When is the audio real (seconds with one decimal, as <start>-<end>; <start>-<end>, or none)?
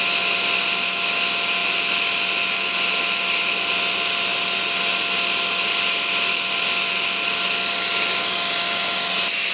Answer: 0.0-9.5